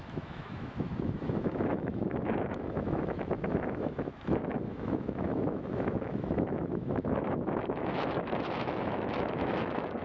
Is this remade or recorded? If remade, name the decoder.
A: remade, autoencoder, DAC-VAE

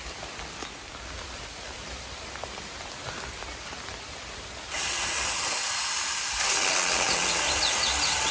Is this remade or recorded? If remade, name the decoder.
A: recorded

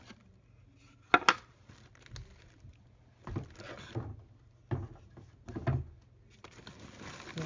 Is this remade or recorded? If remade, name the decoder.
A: recorded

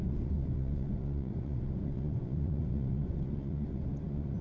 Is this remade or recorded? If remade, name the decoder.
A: remade, vocoder, Vocos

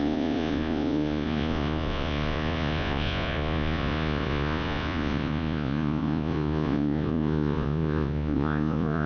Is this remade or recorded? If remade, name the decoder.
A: remade, vocoder, Vocos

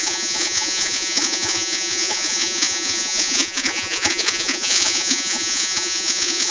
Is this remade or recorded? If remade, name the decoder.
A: remade, vocoder, Vocos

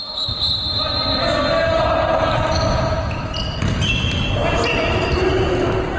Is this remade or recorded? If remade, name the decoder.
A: recorded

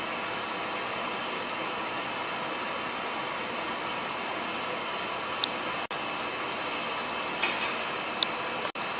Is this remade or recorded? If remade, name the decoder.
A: recorded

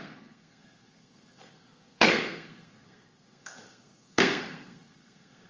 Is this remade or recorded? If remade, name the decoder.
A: remade, codec, SNAC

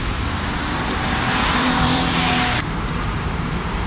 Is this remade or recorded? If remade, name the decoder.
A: remade, vocoder, BigVGAN v2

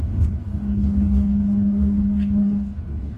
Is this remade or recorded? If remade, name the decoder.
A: remade, codec, DAC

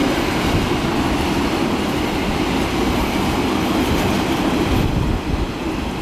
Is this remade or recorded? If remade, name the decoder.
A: recorded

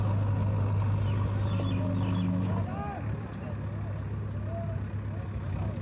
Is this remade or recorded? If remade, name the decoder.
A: recorded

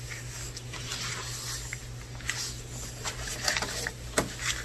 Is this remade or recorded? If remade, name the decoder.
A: recorded